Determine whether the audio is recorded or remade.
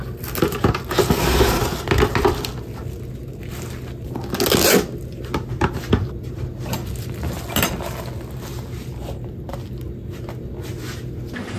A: recorded